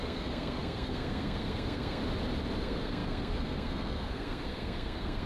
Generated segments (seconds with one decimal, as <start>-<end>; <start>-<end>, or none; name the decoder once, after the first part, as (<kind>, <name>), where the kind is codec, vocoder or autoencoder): 0.0-2.0 (codec, SNAC); 2.6-5.3